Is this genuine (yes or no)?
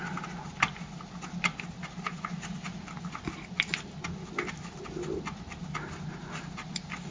yes